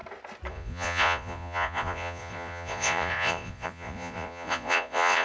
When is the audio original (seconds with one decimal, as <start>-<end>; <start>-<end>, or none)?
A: 0.0-0.5